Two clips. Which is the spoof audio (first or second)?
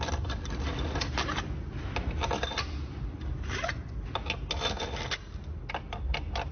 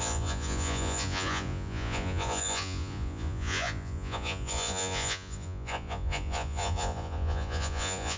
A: second